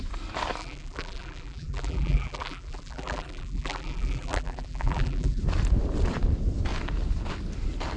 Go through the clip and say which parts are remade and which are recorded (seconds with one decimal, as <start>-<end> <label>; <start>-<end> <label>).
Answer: 0.0-0.6 recorded; 0.6-5.4 remade; 5.4-8.0 recorded